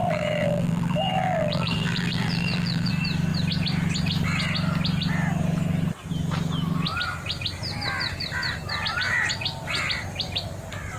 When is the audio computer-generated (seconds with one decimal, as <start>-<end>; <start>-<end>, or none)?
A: 0.0-2.9